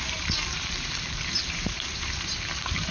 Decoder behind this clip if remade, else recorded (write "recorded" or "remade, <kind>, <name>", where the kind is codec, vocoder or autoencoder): remade, vocoder, BigVGAN v2